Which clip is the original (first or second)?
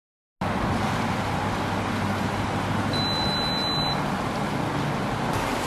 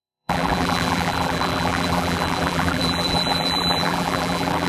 first